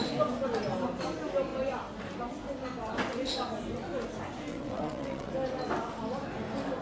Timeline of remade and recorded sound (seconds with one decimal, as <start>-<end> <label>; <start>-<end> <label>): 0.0-4.5 recorded; 4.5-5.3 remade; 5.3-6.8 recorded